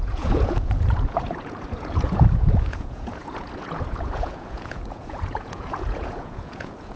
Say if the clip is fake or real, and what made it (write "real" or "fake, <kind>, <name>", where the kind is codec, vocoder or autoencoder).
fake, vocoder, Vocos